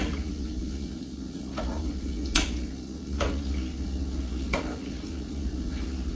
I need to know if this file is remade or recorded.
remade